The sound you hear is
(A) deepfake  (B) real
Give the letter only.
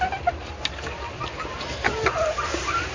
B